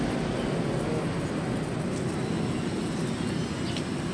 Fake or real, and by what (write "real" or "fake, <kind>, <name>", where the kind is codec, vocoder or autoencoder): real